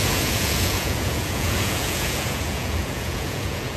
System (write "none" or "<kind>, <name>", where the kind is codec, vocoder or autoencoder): vocoder, Vocos